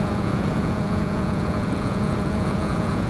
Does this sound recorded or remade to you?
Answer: remade